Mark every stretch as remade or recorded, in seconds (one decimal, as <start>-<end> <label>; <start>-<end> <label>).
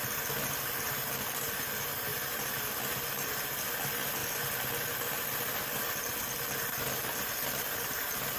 0.0-8.4 recorded